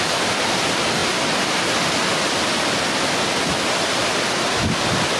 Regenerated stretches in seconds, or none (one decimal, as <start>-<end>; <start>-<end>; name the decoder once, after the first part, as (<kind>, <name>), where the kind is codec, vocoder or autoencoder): none